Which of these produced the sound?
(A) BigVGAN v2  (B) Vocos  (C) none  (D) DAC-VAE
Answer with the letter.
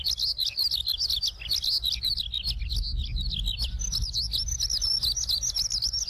C